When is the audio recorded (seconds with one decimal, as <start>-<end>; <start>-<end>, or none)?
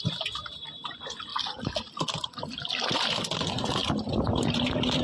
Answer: 1.3-3.4